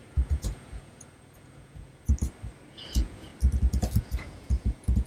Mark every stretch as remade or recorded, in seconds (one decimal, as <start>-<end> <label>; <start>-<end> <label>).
0.0-2.1 remade; 2.1-2.7 recorded; 2.7-3.3 remade; 3.3-4.0 recorded; 4.0-5.1 remade

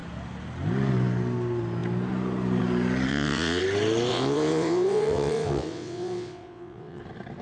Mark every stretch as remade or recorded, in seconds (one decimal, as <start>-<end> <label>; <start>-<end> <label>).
0.0-3.1 recorded; 3.1-3.6 remade; 3.6-4.1 recorded; 4.1-7.0 remade; 7.0-7.4 recorded

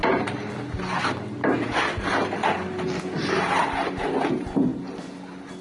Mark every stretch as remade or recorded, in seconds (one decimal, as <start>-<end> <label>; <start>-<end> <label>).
0.0-5.6 recorded

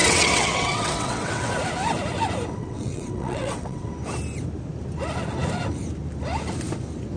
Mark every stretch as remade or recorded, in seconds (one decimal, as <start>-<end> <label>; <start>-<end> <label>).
0.0-1.5 remade; 1.5-2.6 recorded; 2.6-3.9 remade; 3.9-7.2 recorded

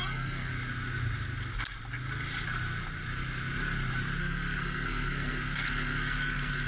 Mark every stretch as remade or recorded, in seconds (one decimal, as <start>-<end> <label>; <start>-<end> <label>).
0.0-0.5 remade; 0.5-4.2 recorded; 4.2-6.7 remade

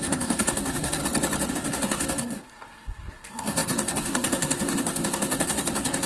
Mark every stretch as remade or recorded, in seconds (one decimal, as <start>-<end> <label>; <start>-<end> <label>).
0.0-1.0 remade; 1.0-1.5 recorded; 1.5-6.1 remade

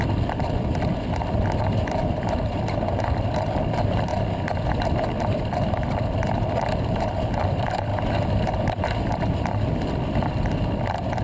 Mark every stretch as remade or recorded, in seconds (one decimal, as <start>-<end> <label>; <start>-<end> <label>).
0.0-4.1 remade; 4.1-5.4 recorded; 5.4-7.9 remade; 7.9-8.8 recorded; 8.8-11.2 remade

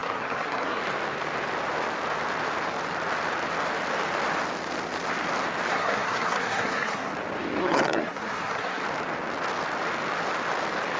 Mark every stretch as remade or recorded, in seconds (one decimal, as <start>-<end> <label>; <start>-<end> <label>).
0.0-0.8 remade; 0.8-5.7 recorded; 5.7-7.1 remade; 7.1-7.6 recorded; 7.6-8.8 remade; 8.8-11.0 recorded